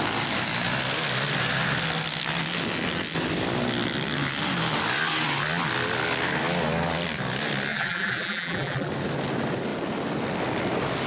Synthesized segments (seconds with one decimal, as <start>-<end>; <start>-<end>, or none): 7.7-8.9